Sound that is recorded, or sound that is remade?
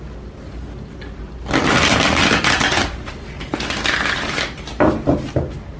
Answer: recorded